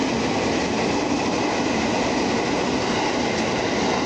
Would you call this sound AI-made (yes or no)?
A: no